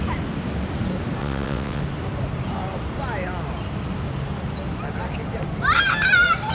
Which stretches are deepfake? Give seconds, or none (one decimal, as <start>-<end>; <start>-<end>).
1.2-1.8